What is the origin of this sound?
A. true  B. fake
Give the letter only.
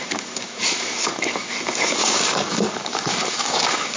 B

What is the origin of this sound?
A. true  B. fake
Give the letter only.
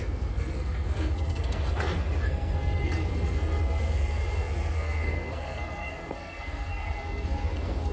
B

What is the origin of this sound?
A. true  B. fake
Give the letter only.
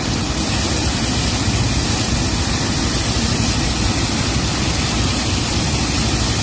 A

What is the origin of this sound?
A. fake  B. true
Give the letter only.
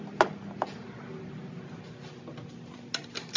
B